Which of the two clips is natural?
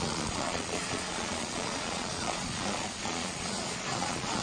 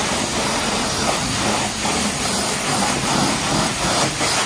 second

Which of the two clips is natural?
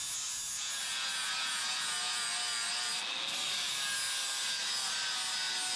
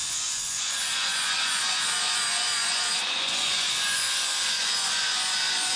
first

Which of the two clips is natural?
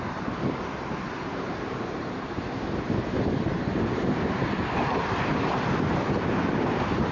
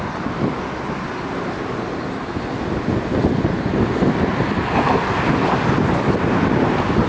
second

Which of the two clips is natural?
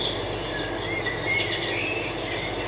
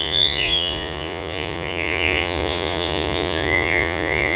first